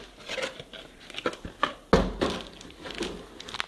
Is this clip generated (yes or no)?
no